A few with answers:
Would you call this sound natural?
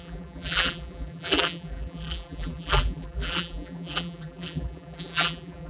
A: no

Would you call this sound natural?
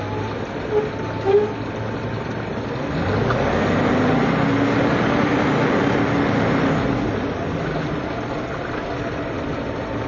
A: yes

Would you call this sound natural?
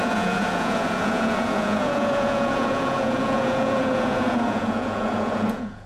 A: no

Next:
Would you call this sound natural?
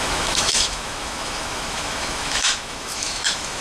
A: no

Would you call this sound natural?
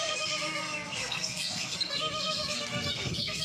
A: no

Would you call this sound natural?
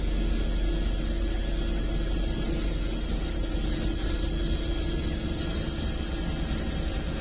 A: yes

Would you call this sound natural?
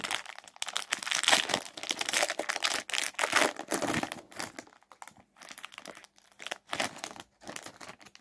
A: yes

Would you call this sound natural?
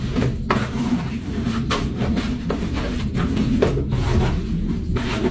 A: yes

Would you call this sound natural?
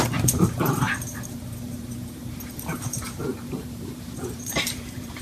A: no